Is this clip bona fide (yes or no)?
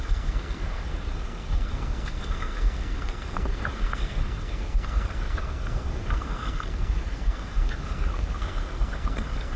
no